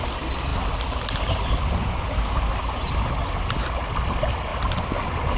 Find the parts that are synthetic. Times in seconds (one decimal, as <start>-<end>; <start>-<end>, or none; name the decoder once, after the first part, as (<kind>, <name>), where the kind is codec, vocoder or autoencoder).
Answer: none